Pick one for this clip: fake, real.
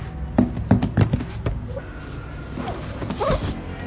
real